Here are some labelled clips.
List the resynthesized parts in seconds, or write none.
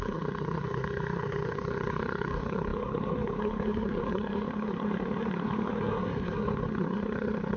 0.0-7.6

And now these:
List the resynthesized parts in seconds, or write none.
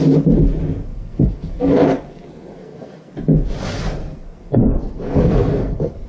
0.9-3.1; 4.0-6.1